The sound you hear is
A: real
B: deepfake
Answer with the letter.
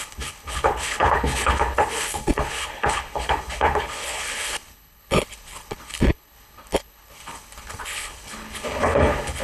B